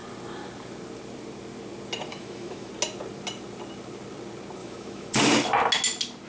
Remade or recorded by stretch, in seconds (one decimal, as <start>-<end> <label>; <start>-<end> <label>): 0.0-2.1 recorded; 2.1-2.7 remade; 2.7-4.6 recorded; 4.6-5.1 remade; 5.1-6.3 recorded